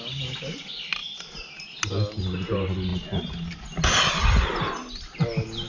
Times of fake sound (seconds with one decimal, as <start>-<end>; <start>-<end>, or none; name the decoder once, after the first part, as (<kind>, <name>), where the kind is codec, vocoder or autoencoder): none